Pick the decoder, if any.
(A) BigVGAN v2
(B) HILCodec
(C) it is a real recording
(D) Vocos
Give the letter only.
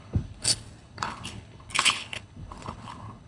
B